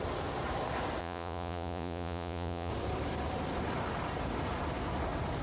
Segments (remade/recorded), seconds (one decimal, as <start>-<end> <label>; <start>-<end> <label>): 0.0-1.0 recorded; 1.0-2.7 remade; 2.7-5.4 recorded